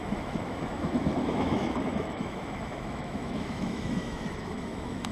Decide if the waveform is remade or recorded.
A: remade